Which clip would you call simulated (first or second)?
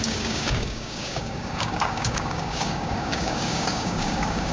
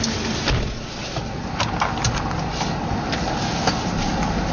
first